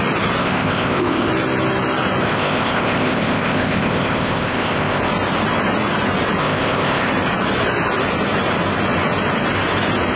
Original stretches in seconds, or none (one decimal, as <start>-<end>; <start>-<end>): 0.0-0.4; 1.3-2.2; 5.0-6.4; 7.1-10.2